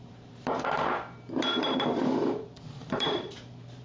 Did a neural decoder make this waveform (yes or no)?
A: yes